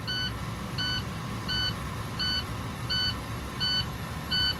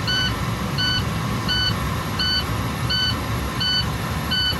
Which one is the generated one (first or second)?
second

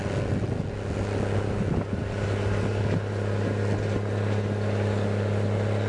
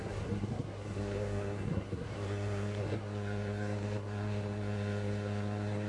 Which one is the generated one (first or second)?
second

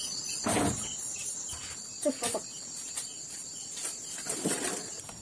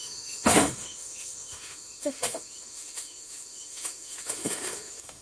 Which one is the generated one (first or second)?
second